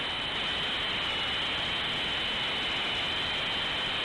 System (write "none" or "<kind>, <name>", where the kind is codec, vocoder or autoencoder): none